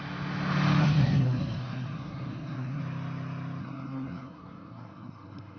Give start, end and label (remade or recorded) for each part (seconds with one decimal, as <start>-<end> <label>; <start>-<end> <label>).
0.0-0.8 recorded; 0.8-2.8 remade; 2.8-3.6 recorded; 3.6-5.6 remade